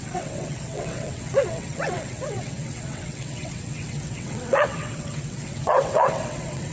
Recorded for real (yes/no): no